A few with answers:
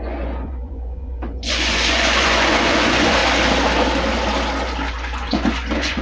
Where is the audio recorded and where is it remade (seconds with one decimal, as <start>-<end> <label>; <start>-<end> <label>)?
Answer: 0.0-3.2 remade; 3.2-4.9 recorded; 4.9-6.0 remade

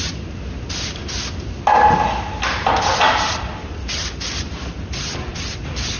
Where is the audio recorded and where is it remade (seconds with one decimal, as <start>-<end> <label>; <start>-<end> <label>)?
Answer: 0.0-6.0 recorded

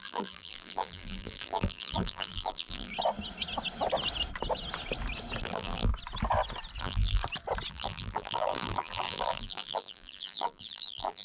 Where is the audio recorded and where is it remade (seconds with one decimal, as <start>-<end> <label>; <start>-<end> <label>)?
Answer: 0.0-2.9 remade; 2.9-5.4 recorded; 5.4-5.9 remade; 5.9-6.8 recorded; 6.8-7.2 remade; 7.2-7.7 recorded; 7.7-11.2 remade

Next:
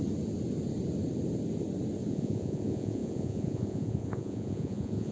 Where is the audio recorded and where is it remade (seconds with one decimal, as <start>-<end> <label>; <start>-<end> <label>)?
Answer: 0.0-2.1 recorded; 2.1-5.1 remade

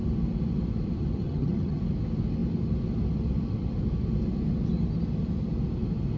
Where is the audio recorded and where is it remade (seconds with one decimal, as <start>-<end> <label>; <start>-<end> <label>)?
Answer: 0.0-1.2 recorded; 1.2-1.8 remade; 1.8-6.2 recorded

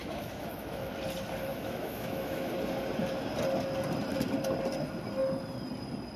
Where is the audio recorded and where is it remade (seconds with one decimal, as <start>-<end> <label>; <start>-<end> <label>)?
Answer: 0.0-1.0 remade; 1.0-1.5 recorded; 1.5-2.5 remade; 2.5-6.2 recorded

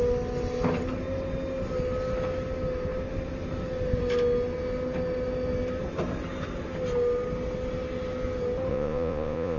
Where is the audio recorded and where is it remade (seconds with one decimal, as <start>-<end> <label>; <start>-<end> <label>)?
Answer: 0.0-8.7 recorded; 8.7-9.6 remade

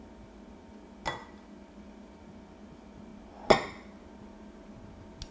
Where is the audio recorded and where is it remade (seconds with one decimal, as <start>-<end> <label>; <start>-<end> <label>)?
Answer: 0.0-5.3 recorded